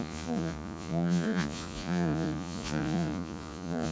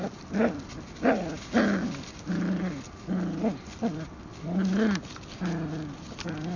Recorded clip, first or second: second